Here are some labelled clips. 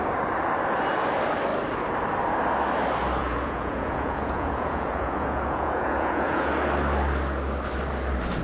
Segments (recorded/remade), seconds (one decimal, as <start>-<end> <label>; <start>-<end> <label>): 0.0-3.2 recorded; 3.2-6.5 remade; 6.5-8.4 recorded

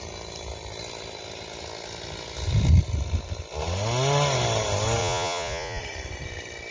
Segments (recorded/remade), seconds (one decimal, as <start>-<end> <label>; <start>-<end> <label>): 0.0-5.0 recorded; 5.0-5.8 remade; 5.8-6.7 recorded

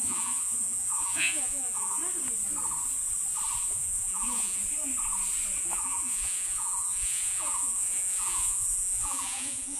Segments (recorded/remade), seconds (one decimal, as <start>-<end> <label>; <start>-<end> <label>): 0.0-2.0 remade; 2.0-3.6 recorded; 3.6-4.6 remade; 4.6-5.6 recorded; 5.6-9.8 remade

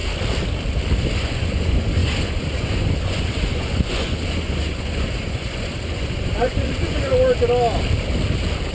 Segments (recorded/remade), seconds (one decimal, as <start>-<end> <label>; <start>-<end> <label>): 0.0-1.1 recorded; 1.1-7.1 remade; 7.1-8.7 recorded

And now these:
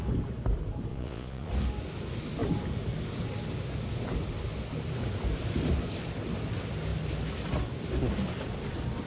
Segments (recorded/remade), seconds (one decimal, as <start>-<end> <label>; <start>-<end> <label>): 0.0-0.9 recorded; 0.9-1.5 remade; 1.5-9.1 recorded

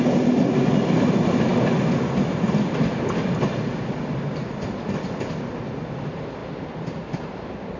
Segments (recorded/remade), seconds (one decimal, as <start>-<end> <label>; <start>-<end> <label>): 0.0-7.8 recorded

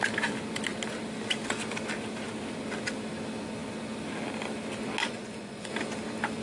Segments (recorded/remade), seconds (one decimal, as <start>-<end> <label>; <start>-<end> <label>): 0.0-5.0 recorded; 5.0-5.7 remade; 5.7-6.4 recorded